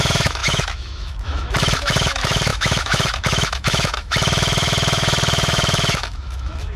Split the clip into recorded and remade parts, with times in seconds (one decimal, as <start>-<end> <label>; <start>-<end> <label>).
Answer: 0.0-6.8 remade